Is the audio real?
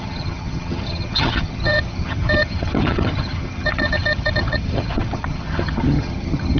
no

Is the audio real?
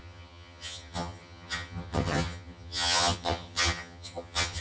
no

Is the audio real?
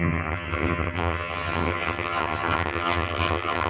no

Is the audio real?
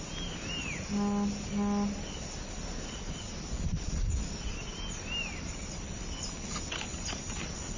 yes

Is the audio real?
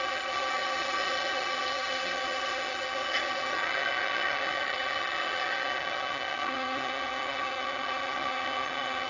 no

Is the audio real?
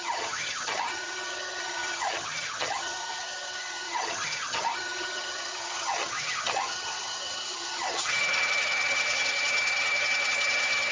no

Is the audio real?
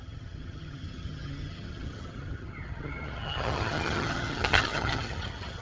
no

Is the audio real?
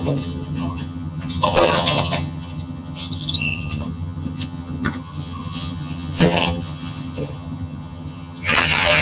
no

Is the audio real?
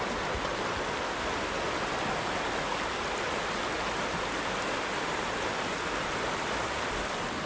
yes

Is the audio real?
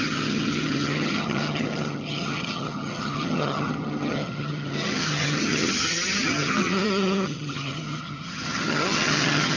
no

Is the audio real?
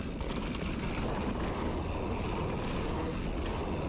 yes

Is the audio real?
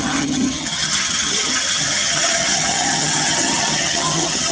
no